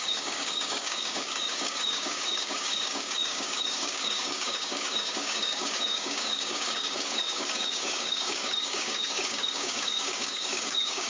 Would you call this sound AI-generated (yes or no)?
yes